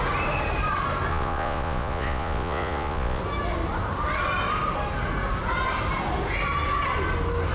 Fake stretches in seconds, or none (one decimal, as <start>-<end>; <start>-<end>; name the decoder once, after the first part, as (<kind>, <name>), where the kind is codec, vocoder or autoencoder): 1.1-3.2 (vocoder, Vocos)